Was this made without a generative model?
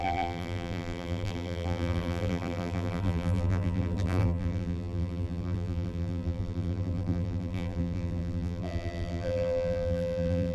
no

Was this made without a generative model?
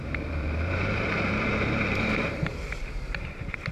no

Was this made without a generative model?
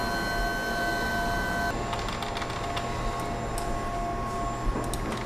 yes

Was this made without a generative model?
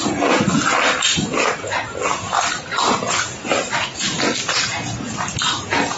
yes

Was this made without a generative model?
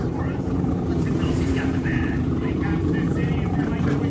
no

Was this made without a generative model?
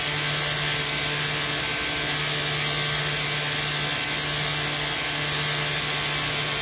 yes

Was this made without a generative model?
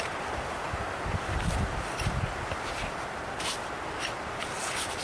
no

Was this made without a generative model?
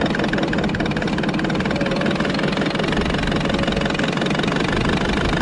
yes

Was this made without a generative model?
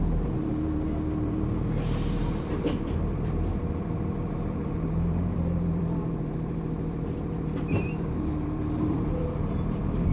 no